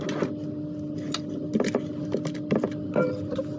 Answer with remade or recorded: recorded